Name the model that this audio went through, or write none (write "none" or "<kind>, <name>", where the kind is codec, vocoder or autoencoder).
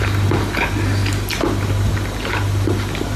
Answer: none